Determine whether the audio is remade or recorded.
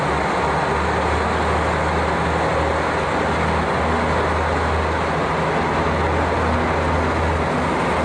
recorded